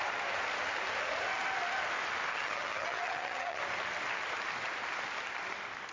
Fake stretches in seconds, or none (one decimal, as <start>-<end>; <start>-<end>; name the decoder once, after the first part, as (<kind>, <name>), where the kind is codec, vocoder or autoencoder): 2.3-3.6 (vocoder, HiFi-GAN)